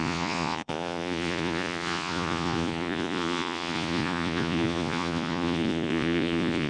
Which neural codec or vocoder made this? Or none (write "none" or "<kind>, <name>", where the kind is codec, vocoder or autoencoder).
vocoder, Vocos